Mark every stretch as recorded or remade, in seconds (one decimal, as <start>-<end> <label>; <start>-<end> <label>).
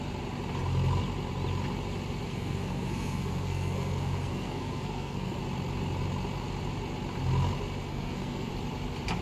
0.0-2.3 recorded; 2.3-5.4 remade; 5.4-7.9 recorded; 7.9-8.5 remade; 8.5-9.2 recorded